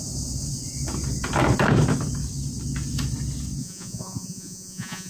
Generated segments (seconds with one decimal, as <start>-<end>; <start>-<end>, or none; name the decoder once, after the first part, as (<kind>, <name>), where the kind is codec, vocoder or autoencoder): 3.6-5.1 (vocoder, Vocos)